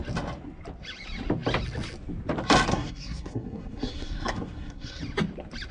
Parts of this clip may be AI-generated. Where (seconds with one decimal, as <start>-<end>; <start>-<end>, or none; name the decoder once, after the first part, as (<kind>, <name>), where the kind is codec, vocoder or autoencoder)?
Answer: 2.7-5.0 (codec, SNAC)